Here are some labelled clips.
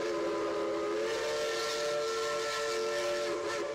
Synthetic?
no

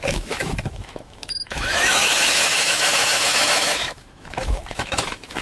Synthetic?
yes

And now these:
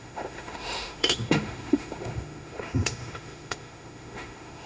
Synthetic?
yes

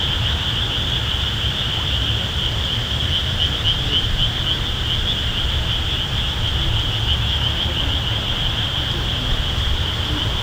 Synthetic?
no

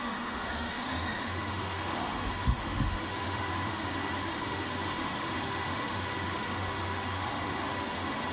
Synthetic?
yes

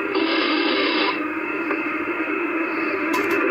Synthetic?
yes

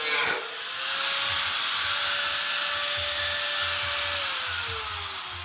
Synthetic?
no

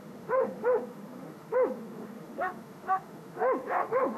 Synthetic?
yes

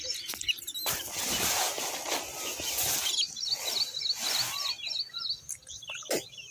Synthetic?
no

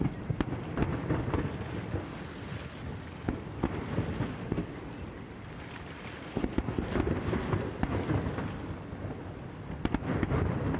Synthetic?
no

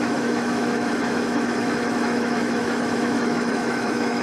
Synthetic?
yes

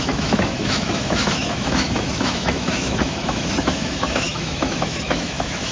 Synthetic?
yes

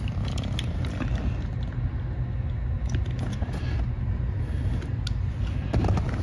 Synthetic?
no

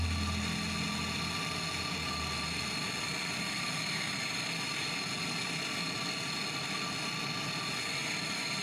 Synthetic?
no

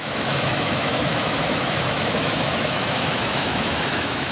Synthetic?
yes